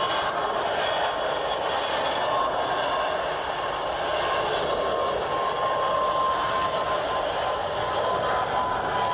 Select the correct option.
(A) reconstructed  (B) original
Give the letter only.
B